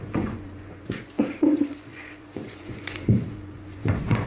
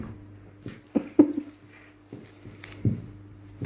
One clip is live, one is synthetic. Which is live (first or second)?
second